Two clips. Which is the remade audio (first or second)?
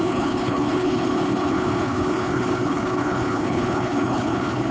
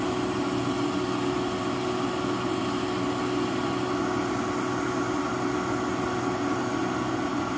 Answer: first